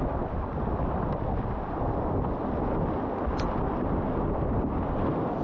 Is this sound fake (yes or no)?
no